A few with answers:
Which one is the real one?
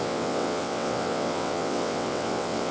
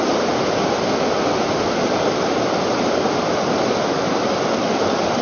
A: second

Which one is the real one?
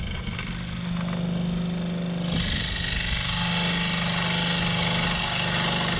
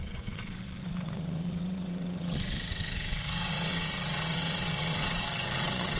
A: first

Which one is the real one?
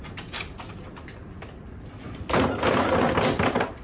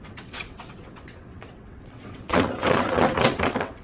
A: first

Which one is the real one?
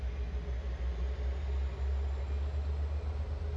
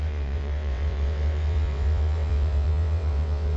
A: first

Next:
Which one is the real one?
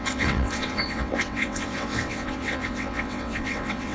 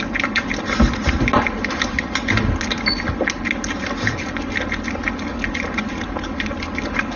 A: second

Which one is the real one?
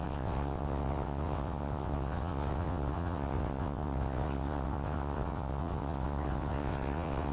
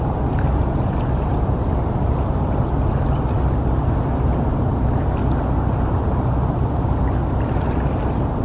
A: second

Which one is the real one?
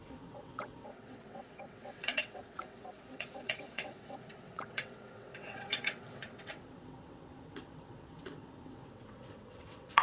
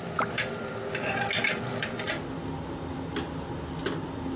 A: second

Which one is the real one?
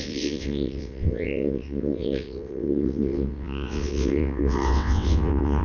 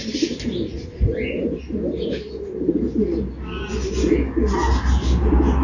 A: second